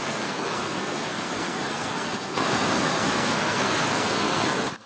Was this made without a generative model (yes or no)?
no